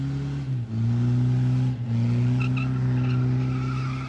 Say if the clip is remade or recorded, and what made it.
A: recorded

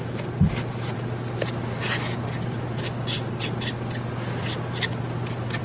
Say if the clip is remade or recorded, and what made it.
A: recorded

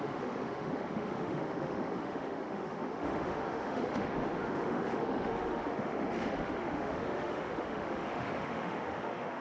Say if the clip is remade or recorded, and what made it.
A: remade, autoencoder, DAC-VAE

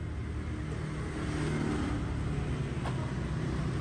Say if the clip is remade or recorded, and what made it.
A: recorded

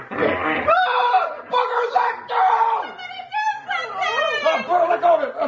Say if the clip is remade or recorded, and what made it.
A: recorded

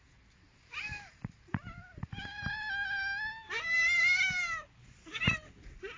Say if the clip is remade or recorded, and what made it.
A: recorded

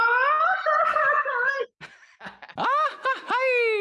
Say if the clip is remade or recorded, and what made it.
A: recorded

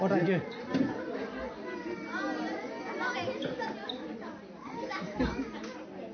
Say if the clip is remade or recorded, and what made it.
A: recorded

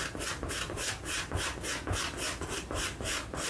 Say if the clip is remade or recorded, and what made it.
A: recorded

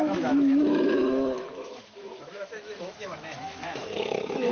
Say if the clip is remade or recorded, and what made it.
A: remade, autoencoder, DAC-VAE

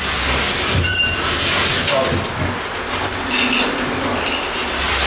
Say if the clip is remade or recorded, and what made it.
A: recorded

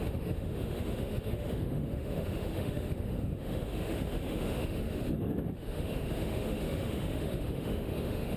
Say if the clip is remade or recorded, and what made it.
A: remade, autoencoder, DAC-VAE